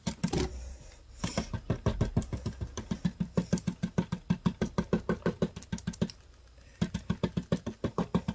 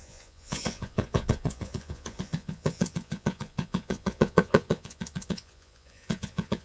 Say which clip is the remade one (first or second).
second